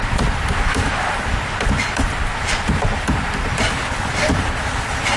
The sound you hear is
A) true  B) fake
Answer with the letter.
A